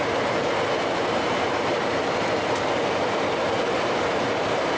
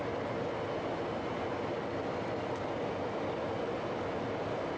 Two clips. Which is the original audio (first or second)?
second